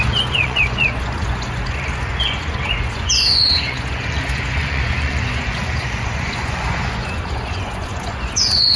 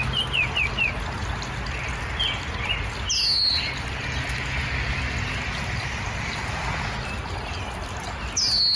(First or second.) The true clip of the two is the second